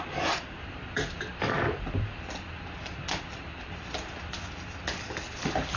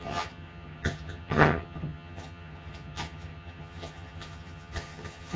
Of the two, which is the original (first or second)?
first